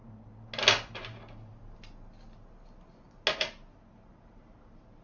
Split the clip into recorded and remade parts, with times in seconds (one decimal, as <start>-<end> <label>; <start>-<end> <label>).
0.0-5.0 recorded